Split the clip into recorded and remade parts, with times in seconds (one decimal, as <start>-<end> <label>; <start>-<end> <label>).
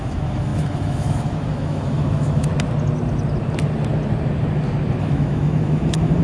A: 0.0-2.5 remade; 2.5-5.0 recorded; 5.0-6.2 remade